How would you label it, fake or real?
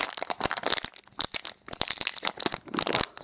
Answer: real